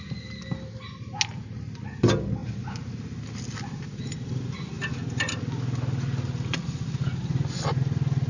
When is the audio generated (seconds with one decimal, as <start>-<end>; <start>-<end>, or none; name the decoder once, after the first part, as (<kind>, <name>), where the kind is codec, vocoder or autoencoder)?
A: none